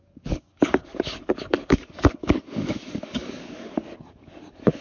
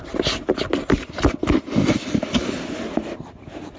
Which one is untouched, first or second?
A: second